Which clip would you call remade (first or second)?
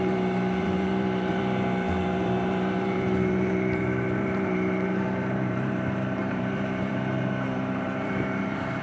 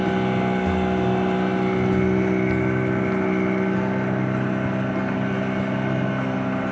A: first